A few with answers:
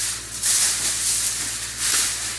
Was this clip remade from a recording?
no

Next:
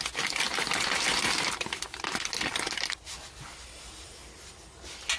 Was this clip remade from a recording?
no